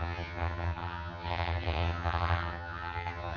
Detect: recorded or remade remade